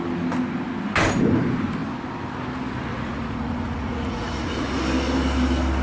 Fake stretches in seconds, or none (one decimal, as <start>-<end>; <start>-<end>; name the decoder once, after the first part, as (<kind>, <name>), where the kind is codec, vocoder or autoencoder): 2.9-4.8 (vocoder, Vocos)